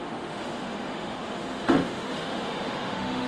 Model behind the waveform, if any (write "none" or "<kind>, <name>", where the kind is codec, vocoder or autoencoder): autoencoder, DAC-VAE